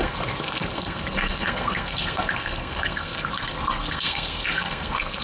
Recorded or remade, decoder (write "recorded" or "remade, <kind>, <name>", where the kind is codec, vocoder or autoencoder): remade, codec, SNAC